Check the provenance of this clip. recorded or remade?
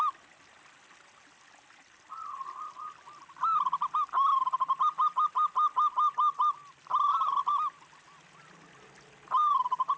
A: recorded